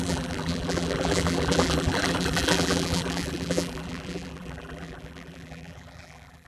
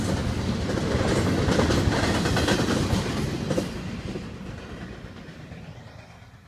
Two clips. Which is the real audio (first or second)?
second